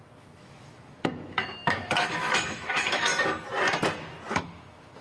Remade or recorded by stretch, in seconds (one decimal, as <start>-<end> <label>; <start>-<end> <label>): 0.0-3.1 remade; 3.1-4.3 recorded; 4.3-5.0 remade